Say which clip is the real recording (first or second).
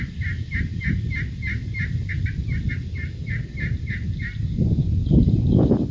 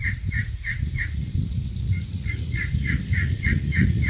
first